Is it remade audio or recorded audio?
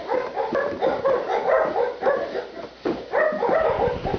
recorded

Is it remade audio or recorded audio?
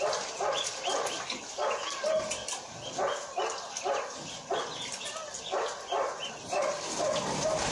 recorded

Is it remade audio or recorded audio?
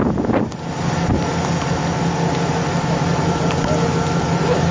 recorded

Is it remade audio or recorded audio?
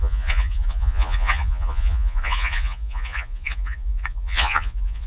remade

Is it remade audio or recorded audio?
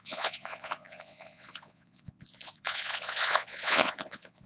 remade